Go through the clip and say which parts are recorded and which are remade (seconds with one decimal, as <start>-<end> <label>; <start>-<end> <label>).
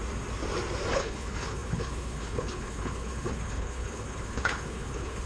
0.0-0.9 recorded; 0.9-5.3 remade